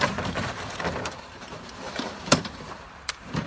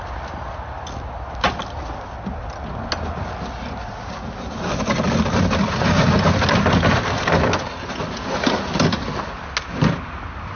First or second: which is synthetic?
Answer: first